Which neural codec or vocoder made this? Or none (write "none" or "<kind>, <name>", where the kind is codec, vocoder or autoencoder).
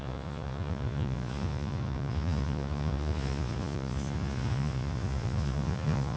vocoder, Vocos